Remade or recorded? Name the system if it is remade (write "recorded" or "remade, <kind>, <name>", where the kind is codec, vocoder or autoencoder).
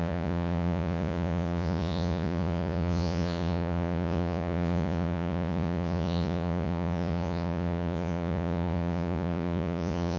remade, vocoder, Vocos